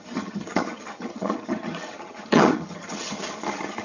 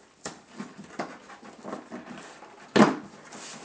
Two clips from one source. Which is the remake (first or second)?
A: first